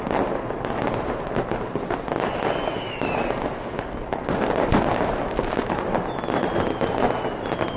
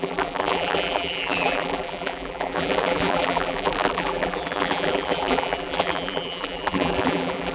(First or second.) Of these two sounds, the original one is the first